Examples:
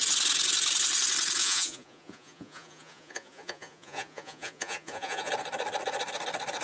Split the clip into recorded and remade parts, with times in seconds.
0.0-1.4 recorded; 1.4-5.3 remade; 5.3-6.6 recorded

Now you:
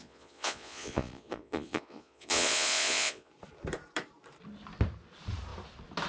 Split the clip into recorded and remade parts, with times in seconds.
0.0-3.3 remade; 3.3-6.1 recorded

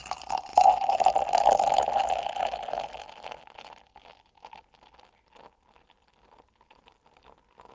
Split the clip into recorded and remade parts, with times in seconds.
0.0-0.5 recorded; 0.5-1.0 remade; 1.0-7.7 recorded